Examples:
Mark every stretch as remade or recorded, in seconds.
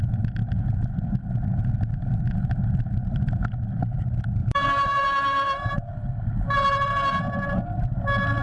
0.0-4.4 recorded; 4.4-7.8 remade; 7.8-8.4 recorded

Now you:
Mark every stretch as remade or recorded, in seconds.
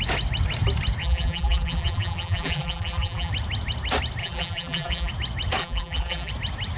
0.0-1.0 recorded; 1.0-3.3 remade; 3.3-4.2 recorded; 4.2-5.1 remade; 5.1-5.6 recorded; 5.6-6.3 remade; 6.3-6.8 recorded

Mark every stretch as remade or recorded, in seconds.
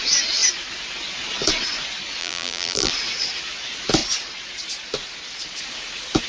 0.0-2.2 recorded; 2.2-2.9 remade; 2.9-6.3 recorded